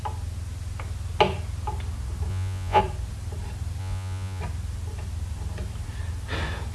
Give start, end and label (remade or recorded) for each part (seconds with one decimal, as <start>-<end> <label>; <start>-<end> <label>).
0.0-2.3 recorded; 2.3-2.8 remade; 2.8-3.8 recorded; 3.8-4.4 remade; 4.4-6.7 recorded